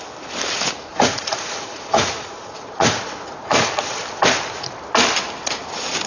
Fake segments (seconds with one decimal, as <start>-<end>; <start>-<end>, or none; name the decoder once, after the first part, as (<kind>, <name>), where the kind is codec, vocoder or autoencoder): 0.9-4.0 (vocoder, Vocos)

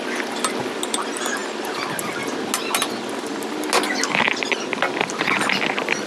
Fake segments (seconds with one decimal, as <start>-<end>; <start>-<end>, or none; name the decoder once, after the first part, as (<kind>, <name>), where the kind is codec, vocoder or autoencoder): none

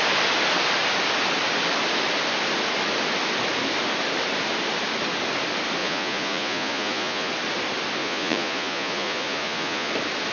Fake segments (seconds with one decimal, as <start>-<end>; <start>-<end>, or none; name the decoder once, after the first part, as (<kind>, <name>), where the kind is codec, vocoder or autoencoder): 5.8-7.3 (vocoder, Vocos); 8.0-9.9

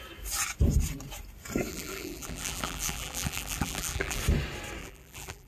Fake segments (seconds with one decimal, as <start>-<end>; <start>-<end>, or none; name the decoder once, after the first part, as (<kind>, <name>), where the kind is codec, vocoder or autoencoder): 1.7-4.2 (vocoder, BigVGAN v2); 4.8-5.5

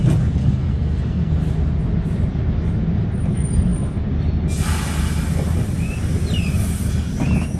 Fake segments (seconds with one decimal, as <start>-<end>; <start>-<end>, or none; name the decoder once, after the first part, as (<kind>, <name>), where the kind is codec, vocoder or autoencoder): 0.4-1.3 (codec, SNAC)